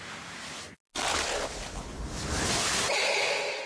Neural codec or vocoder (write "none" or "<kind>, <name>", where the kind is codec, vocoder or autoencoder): none